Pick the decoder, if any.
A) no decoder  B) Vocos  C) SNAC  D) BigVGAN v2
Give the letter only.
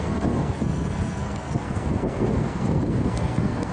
C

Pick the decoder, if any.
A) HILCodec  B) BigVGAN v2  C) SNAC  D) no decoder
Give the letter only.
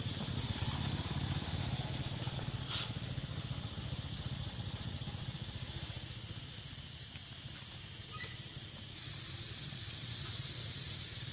D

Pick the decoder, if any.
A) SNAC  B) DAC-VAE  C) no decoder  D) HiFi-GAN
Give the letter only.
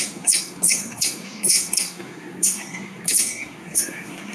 A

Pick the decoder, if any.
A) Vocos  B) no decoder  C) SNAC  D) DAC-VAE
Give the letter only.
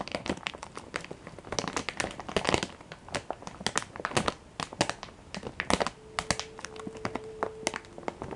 B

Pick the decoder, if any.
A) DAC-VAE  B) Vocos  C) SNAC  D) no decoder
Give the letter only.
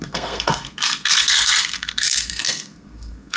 C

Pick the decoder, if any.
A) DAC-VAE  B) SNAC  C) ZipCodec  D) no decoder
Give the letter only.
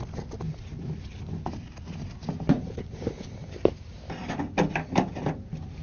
D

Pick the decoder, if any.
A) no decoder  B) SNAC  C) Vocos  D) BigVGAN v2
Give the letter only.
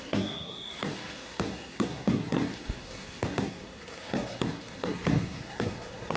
B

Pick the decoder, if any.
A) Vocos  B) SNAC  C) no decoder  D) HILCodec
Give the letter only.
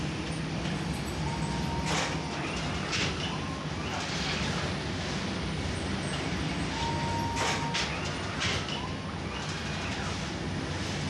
C